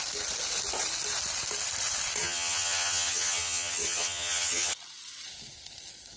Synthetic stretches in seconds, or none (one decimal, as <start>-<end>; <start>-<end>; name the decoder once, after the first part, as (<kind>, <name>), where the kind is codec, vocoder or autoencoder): 2.2-4.7 (vocoder, HiFi-GAN)